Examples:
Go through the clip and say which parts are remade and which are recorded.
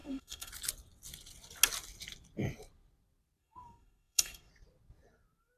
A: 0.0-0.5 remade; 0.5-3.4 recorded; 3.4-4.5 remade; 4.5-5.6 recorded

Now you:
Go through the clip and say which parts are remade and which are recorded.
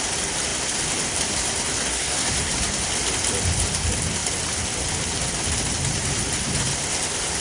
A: 0.0-1.9 recorded; 1.9-2.5 remade; 2.5-7.4 recorded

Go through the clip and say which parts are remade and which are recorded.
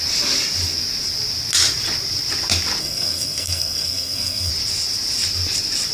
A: 0.0-2.8 recorded; 2.8-4.5 remade; 4.5-5.9 recorded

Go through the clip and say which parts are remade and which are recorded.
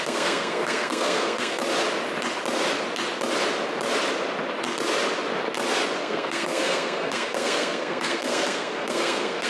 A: 0.0-1.6 remade; 1.6-6.0 recorded; 6.0-9.5 remade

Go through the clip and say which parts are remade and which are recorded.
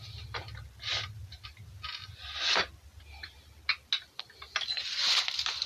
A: 0.0-5.7 recorded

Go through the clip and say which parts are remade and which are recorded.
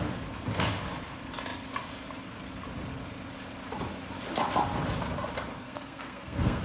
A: 0.0-5.5 recorded; 5.5-6.6 remade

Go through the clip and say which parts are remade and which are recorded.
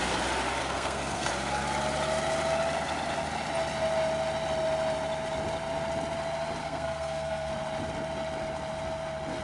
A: 0.0-0.6 recorded; 0.6-1.3 remade; 1.3-6.6 recorded; 6.6-7.5 remade; 7.5-9.4 recorded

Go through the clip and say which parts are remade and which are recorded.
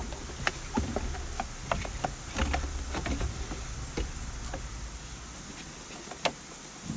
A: 0.0-7.0 recorded